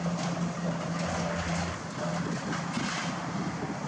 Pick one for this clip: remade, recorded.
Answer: recorded